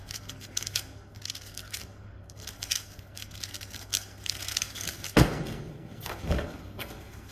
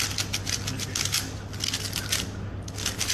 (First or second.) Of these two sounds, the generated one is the first